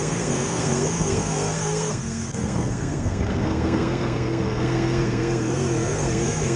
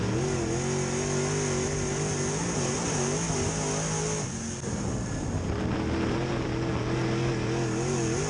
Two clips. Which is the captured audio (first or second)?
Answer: second